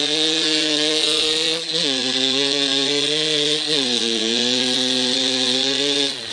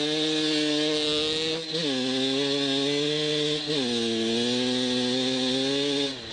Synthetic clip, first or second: first